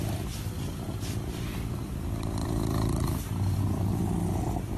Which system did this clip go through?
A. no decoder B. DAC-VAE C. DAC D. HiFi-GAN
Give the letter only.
A